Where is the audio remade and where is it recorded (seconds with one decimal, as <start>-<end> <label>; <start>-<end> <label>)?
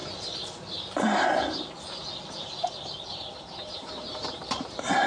0.0-3.1 recorded; 3.1-5.1 remade